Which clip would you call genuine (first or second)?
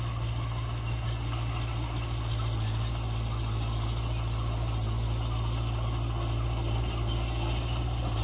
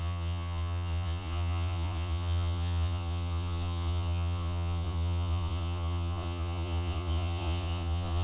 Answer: first